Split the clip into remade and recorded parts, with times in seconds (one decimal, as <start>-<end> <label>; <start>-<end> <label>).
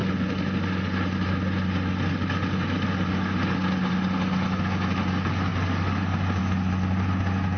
0.0-7.6 recorded